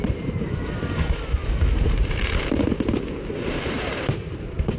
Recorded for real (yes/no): no